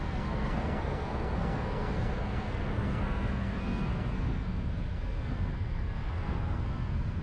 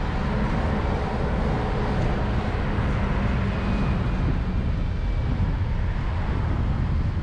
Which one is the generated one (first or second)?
first